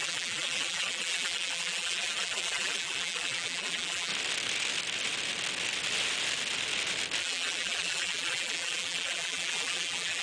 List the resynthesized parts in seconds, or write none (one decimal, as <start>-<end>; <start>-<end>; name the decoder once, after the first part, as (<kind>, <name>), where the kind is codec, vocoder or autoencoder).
0.0-4.1 (vocoder, BigVGAN v2); 7.2-10.2